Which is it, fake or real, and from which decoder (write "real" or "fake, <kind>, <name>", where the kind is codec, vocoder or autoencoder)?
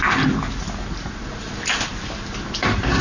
real